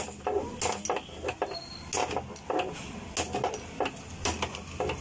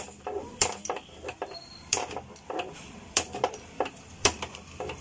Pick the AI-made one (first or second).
second